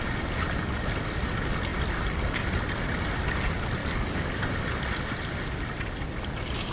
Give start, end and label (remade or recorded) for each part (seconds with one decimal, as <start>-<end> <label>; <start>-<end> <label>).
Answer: 0.0-3.8 recorded; 3.8-4.4 remade; 4.4-6.7 recorded